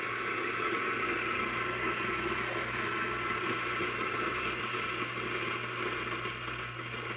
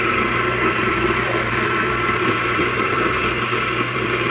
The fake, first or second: second